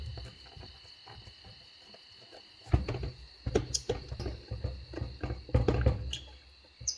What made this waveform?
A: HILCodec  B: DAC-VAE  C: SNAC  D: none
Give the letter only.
D